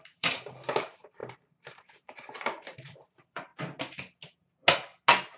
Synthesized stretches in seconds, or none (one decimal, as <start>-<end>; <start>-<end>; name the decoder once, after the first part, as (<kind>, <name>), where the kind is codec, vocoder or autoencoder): 0.0-3.5 (vocoder, BigVGAN v2)